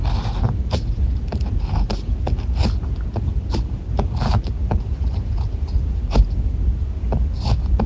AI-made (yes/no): no